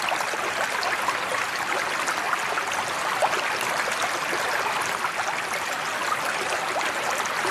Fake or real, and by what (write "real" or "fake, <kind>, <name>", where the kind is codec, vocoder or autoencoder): real